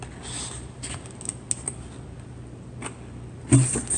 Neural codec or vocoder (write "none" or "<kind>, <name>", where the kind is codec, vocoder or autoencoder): none